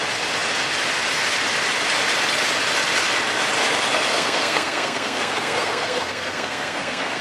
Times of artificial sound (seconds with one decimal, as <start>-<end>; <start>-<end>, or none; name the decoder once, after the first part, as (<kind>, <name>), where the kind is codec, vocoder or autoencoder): 4.1-7.2 (codec, SNAC)